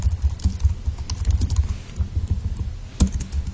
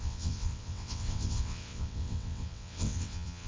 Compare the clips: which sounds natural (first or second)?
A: first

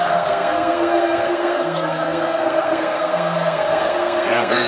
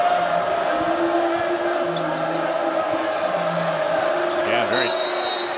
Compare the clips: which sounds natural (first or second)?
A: second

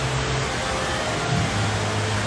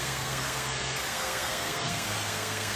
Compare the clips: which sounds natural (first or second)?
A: first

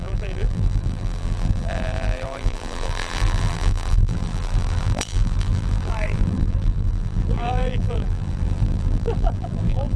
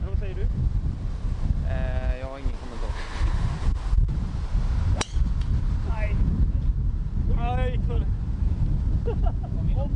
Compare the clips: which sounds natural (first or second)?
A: second